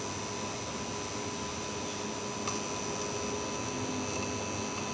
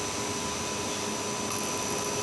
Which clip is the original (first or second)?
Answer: first